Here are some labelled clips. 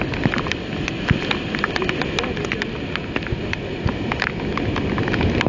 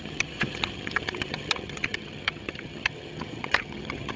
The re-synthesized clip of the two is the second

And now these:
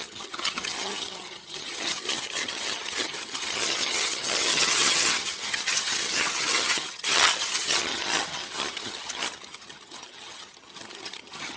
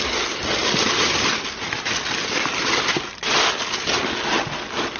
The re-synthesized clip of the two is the first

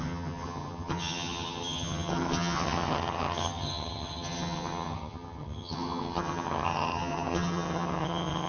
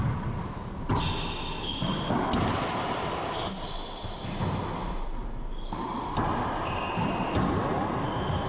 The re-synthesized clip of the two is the first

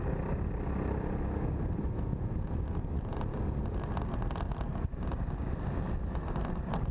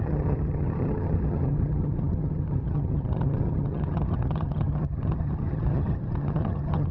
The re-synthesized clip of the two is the second